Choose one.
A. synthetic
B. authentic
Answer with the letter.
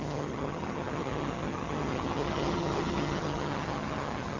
A